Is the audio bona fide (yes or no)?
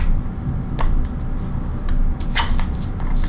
yes